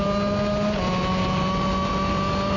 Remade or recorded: recorded